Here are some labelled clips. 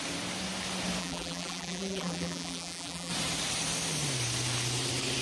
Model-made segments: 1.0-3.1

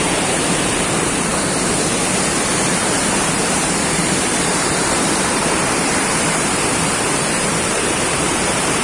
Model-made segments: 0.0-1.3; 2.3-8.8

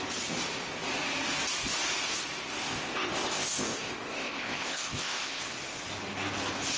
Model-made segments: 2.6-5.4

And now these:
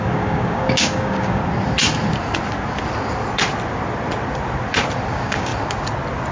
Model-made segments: 0.0-1.4; 5.1-5.5